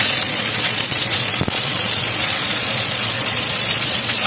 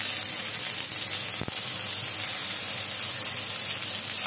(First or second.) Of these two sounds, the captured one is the second